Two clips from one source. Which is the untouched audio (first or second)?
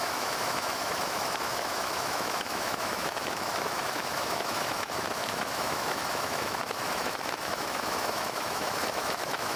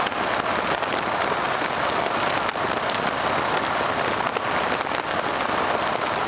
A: second